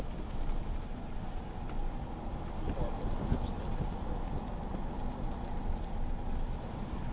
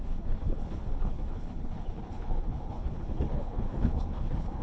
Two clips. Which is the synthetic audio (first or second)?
second